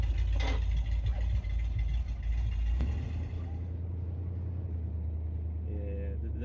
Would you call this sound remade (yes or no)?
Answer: no